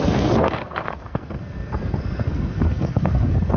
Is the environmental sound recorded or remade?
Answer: remade